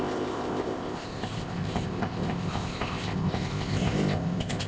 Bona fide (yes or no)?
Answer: no